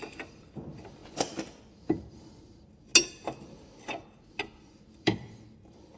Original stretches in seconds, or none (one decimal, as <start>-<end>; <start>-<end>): 2.9-4.7